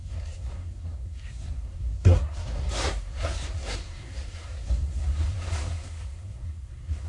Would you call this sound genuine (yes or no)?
no